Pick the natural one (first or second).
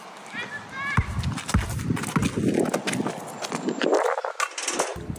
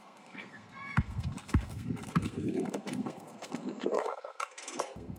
first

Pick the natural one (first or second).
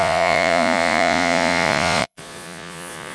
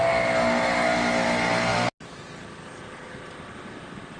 second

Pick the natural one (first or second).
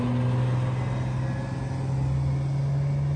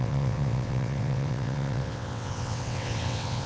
first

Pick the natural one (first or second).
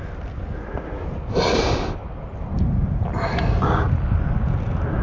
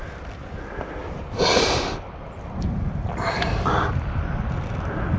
first